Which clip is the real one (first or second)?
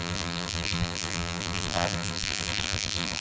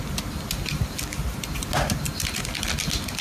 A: second